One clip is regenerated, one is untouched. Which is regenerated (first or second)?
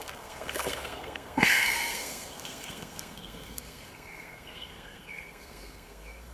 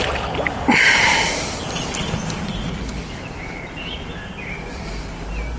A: first